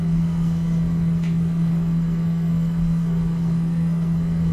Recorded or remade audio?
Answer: remade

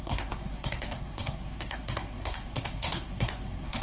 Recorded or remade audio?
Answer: remade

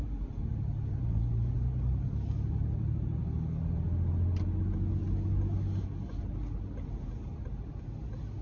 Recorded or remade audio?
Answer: recorded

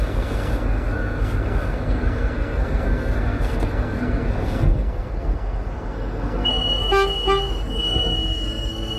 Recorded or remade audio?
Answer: remade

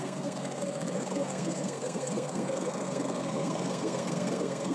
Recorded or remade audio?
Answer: remade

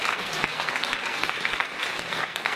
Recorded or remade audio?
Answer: remade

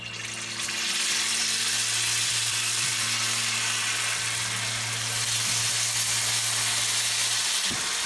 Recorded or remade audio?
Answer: recorded